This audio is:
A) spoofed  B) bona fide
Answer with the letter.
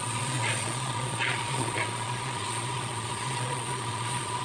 A